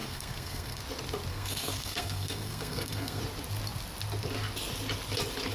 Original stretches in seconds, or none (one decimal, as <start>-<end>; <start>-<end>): 0.8-1.3; 3.2-5.5